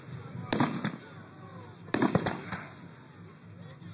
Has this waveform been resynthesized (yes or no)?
no